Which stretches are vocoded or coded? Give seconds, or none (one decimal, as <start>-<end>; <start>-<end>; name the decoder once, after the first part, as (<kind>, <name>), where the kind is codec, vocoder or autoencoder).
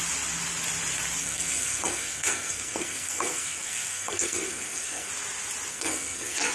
1.2-5.1 (codec, SNAC); 5.7-6.5